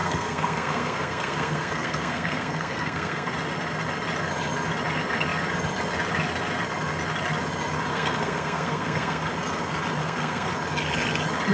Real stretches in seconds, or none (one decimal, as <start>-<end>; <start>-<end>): 3.3-7.9; 9.3-10.0; 10.5-11.5